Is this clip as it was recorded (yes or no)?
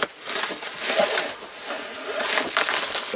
yes